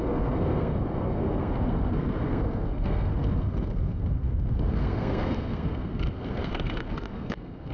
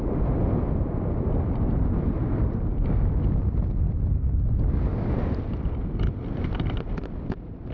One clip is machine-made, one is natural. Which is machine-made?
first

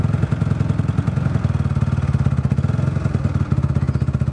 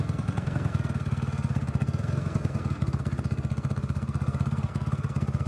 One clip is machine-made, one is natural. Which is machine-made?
second